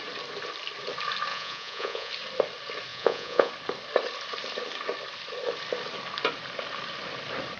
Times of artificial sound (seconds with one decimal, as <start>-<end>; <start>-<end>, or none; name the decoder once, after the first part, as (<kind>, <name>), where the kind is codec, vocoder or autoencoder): 1.3-2.1 (vocoder, Vocos); 2.9-3.5